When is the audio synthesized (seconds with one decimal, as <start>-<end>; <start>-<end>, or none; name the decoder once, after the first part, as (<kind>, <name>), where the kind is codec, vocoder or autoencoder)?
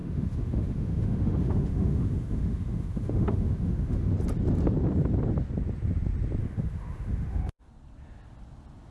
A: 0.0-4.1 (autoencoder, DAC-VAE); 6.4-7.7